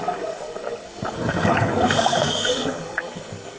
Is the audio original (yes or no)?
no